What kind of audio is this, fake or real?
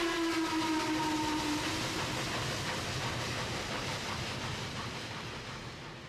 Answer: real